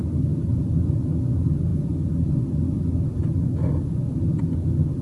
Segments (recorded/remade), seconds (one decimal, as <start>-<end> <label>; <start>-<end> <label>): 0.0-5.0 recorded